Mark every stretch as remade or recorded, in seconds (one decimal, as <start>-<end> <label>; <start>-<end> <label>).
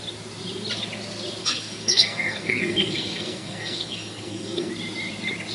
0.0-1.4 recorded; 1.4-4.7 remade; 4.7-5.5 recorded